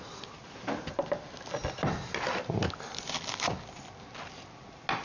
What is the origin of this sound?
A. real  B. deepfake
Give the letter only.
A